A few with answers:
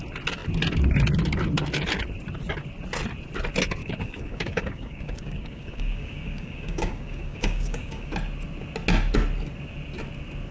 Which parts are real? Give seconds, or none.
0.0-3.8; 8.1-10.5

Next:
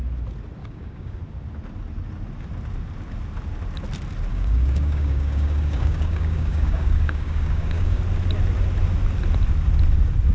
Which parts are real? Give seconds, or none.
0.0-0.6; 1.2-4.3; 8.0-10.3

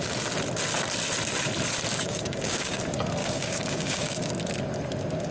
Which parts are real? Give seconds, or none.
0.0-1.9; 2.8-3.2; 4.3-5.3

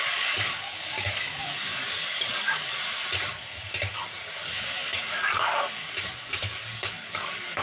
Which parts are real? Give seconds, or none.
2.7-4.3

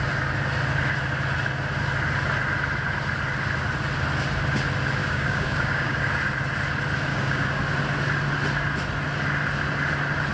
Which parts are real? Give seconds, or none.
0.0-5.0; 6.0-7.1; 7.6-10.3

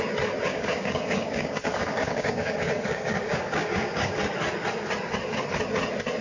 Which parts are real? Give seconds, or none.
0.0-0.5; 4.2-6.2

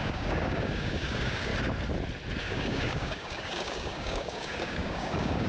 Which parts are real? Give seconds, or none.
1.5-2.4

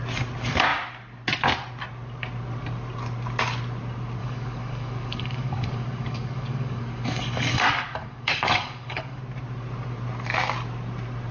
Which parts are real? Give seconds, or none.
0.0-4.2; 9.2-11.3